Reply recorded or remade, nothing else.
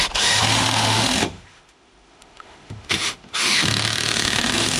remade